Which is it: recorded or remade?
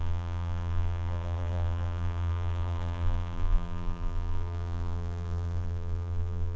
remade